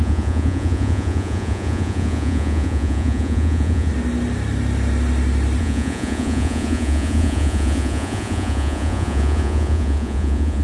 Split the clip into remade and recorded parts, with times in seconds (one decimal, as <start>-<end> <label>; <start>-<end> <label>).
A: 0.0-3.9 remade; 3.9-5.6 recorded; 5.6-10.6 remade